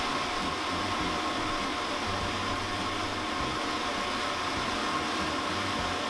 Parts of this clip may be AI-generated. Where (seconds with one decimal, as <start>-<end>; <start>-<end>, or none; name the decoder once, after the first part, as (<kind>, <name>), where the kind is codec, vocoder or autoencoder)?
1.7-2.5 (vocoder, BigVGAN v2)